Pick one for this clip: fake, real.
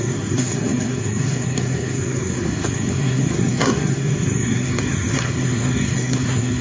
fake